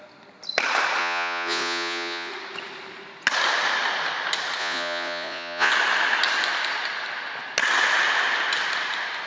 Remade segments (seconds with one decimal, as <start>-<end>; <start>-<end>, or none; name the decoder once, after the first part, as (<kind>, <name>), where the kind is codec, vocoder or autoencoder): 1.0-2.3 (vocoder, Vocos); 4.6-5.7